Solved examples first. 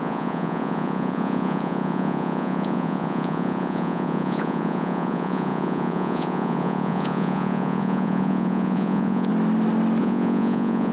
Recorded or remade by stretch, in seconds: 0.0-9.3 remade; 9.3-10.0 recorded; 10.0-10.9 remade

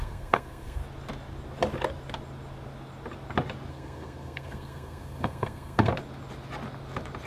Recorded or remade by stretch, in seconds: 0.0-0.8 remade; 0.8-3.7 recorded; 3.7-5.9 remade; 5.9-7.3 recorded